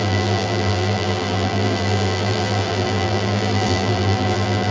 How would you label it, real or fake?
fake